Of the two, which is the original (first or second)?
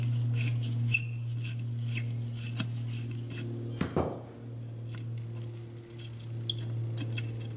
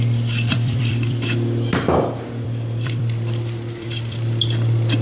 first